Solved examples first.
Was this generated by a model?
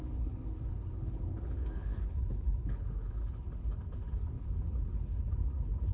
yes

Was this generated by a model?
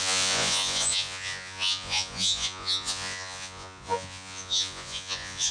yes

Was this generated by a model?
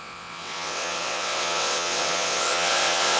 yes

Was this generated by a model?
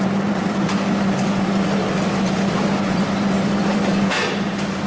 yes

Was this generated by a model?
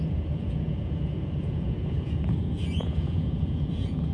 yes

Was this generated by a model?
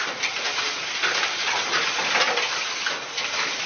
no